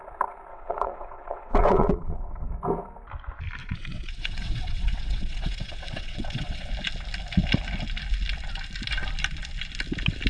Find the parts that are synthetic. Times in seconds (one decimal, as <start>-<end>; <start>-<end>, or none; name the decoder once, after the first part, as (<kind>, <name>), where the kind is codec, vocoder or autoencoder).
0.5-2.5 (vocoder, WaveNeXt); 3.6-6.7